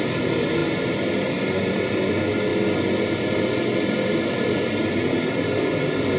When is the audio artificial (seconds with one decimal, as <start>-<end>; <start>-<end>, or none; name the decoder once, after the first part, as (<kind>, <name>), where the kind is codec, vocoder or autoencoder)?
none